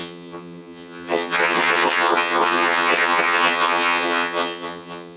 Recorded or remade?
remade